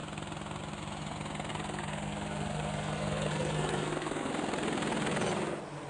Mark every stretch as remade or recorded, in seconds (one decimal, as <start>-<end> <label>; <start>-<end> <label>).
0.0-1.5 recorded; 1.5-4.3 remade; 4.3-5.9 recorded

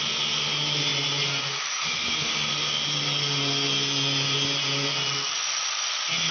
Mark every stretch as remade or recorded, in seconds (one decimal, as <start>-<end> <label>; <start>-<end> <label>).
0.0-6.3 recorded

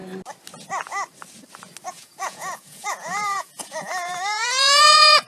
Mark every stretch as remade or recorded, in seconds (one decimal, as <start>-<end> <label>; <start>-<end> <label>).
0.0-1.9 recorded; 1.9-5.3 remade

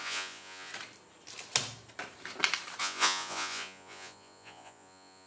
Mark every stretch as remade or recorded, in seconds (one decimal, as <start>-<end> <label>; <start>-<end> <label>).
0.0-0.7 remade; 0.7-2.8 recorded; 2.8-5.3 remade